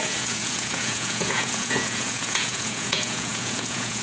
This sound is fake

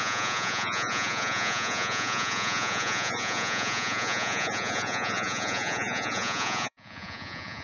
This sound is fake